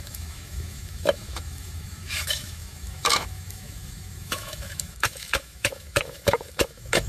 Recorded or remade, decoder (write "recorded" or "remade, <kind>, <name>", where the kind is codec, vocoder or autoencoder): remade, autoencoder, DAC-VAE